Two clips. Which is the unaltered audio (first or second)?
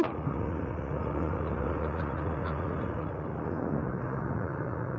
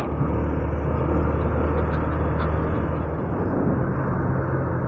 second